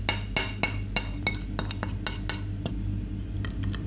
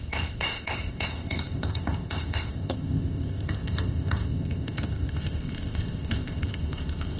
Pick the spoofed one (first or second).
second